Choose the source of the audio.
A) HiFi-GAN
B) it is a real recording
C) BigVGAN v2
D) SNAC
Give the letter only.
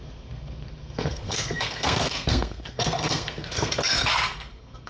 D